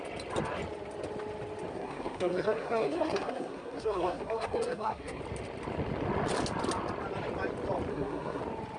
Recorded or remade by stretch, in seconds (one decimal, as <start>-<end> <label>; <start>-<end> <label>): 0.0-1.7 recorded; 1.7-5.2 remade; 5.2-7.9 recorded; 7.9-8.4 remade; 8.4-8.8 recorded